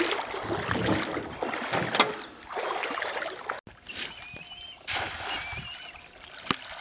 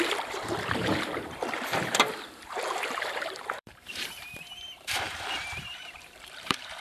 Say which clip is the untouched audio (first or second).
first